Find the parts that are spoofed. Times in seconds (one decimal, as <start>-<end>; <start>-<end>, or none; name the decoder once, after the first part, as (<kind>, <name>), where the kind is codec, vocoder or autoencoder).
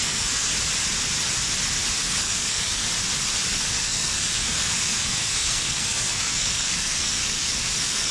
0.0-0.5 (codec, SNAC); 1.9-2.9; 3.5-8.1